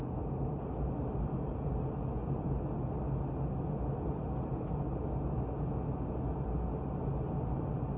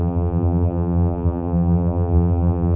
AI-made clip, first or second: second